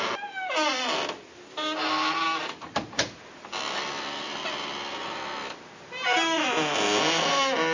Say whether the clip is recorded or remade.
recorded